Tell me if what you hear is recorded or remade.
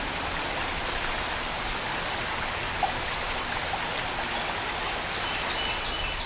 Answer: recorded